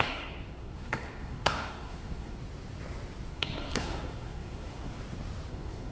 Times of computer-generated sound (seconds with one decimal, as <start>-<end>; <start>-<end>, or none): 0.0-2.4; 3.3-5.0; 5.5-5.9